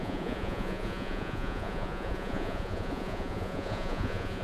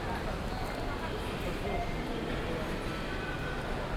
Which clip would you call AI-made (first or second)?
first